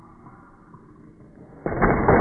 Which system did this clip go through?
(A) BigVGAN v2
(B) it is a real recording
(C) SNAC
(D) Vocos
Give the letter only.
B